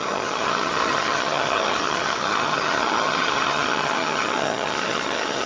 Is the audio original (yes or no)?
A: no